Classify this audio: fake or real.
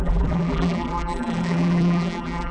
fake